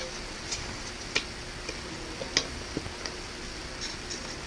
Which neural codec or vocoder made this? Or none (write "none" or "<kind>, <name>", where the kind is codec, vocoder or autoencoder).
none